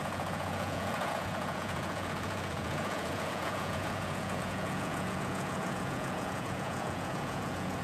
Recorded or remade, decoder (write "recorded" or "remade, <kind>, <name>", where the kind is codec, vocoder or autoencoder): remade, vocoder, Vocos